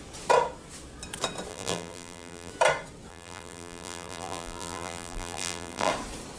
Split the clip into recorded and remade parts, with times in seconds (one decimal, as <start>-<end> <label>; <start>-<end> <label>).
0.0-1.5 recorded; 1.5-2.5 remade; 2.5-3.1 recorded; 3.1-5.9 remade; 5.9-6.4 recorded